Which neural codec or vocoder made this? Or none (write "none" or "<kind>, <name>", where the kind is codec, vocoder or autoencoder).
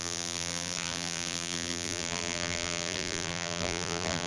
vocoder, BigVGAN v2